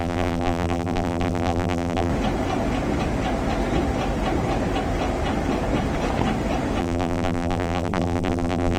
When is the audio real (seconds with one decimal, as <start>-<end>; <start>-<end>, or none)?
2.1-6.8